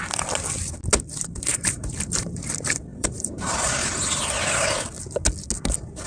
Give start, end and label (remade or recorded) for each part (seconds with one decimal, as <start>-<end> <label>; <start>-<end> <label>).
0.0-1.5 recorded; 1.5-2.5 remade; 2.5-2.9 recorded; 2.9-4.3 remade; 4.3-6.1 recorded